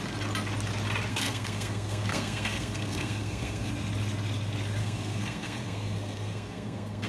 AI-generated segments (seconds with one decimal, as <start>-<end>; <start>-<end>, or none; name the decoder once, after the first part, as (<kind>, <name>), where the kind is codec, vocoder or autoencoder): 1.1-3.7 (codec, SNAC); 4.8-7.1